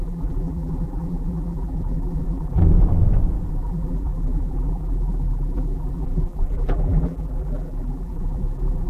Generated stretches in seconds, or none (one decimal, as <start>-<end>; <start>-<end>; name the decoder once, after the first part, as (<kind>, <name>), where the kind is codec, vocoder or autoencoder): 0.0-2.6 (vocoder, BigVGAN v2); 3.5-8.9